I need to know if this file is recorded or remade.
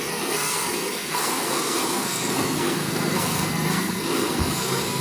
remade